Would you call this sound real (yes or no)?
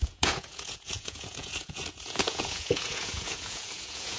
no